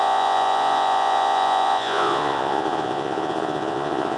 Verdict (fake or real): fake